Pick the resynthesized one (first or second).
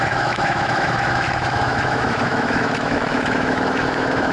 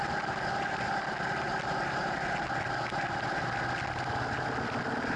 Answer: first